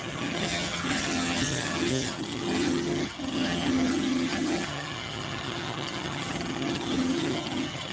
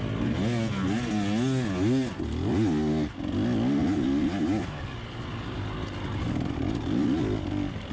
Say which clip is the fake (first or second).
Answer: first